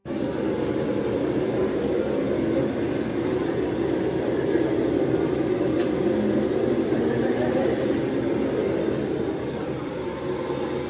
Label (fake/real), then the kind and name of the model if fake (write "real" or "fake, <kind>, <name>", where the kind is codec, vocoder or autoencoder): real